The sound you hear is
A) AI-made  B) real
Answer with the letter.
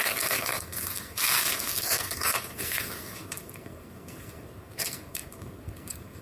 A